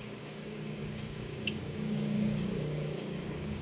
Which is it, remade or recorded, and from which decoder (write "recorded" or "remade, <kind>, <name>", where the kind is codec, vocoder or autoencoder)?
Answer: remade, codec, DAC